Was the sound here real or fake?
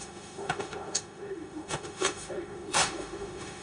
fake